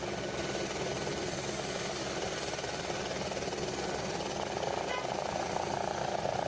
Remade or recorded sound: recorded